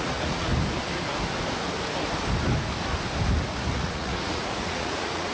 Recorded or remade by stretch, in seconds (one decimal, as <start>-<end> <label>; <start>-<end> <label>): 0.0-0.5 remade; 0.5-3.7 recorded; 3.7-5.3 remade